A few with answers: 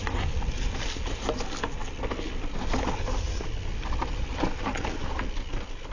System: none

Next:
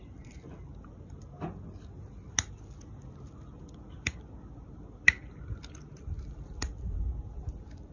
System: none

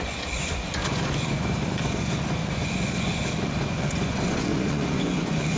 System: vocoder, Vocos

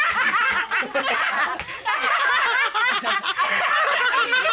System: none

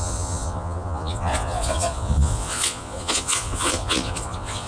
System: vocoder, Vocos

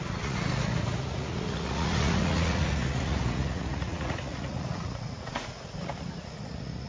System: vocoder, Vocos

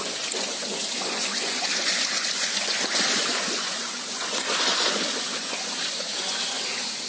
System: vocoder, Vocos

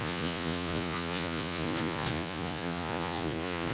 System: vocoder, Vocos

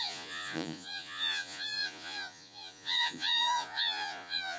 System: vocoder, Vocos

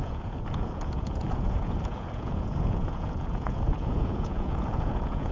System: vocoder, Vocos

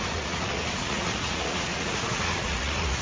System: vocoder, Vocos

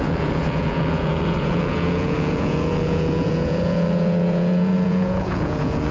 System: vocoder, Vocos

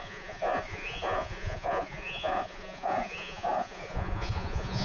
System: vocoder, Vocos